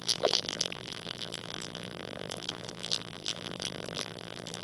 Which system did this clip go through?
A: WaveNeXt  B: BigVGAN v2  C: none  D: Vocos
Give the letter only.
B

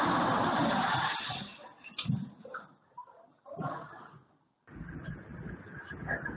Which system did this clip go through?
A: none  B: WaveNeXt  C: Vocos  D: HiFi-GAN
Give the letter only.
A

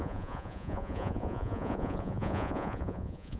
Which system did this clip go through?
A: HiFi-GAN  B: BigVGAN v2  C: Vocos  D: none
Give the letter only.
C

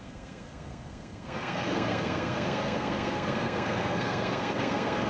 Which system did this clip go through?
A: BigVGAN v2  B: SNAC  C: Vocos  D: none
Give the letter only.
B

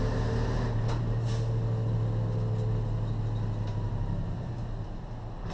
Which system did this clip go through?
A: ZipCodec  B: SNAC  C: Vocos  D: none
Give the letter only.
D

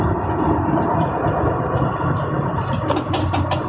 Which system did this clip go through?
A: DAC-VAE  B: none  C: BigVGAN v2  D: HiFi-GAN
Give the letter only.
B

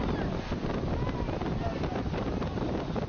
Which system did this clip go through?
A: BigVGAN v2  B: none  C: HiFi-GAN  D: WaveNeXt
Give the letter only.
B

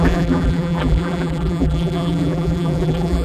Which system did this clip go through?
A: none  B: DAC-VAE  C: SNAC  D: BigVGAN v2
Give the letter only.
D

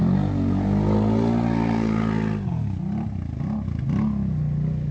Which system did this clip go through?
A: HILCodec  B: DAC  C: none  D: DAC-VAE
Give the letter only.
C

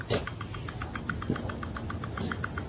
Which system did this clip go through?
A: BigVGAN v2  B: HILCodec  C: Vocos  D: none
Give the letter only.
D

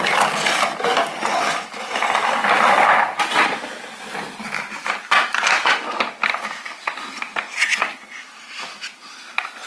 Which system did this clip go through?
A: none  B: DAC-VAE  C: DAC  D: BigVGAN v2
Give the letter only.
A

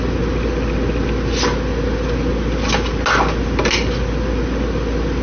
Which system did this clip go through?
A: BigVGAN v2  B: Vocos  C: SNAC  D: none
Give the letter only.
D